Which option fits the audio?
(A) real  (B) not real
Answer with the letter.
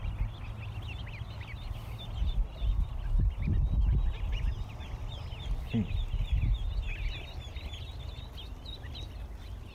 A